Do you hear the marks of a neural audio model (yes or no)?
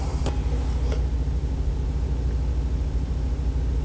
no